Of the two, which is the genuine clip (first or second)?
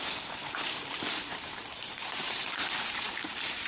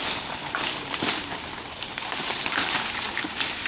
second